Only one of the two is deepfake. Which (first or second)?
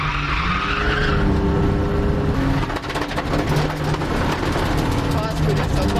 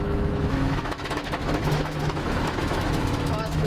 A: second